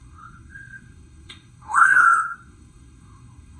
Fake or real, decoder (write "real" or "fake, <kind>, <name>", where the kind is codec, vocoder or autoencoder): fake, codec, SNAC